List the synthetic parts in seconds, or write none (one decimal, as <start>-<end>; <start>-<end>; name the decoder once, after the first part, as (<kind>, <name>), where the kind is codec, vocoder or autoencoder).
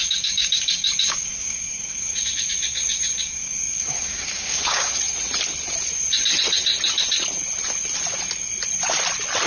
0.0-5.0 (codec, DAC)